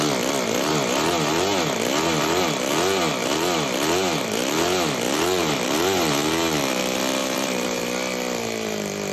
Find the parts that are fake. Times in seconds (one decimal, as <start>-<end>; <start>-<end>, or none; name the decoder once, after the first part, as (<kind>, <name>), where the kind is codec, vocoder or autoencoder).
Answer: 7.2-7.8 (vocoder, BigVGAN v2)